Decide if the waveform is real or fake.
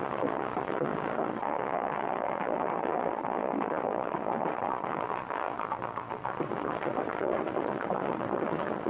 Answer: fake